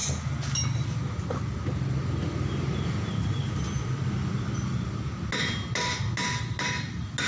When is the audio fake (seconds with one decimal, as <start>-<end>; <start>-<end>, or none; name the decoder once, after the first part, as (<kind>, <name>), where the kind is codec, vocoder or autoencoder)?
none